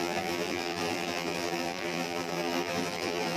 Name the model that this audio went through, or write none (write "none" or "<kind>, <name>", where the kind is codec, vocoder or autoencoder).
vocoder, BigVGAN v2